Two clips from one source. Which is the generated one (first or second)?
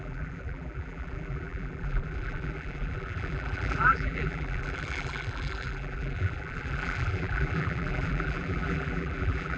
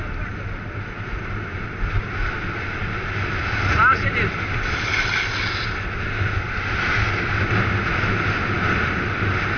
first